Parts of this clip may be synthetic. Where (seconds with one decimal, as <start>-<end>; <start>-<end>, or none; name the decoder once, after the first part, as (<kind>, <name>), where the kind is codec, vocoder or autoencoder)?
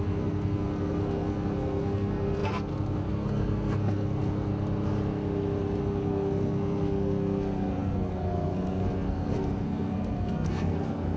0.0-4.5 (codec, SNAC); 5.8-11.2